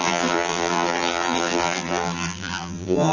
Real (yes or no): no